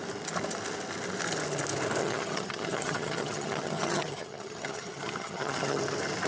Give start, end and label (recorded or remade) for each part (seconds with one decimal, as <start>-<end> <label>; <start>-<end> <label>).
0.0-2.0 recorded; 2.0-5.8 remade; 5.8-6.3 recorded